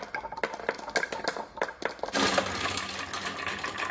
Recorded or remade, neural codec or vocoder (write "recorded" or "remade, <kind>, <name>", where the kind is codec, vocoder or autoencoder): recorded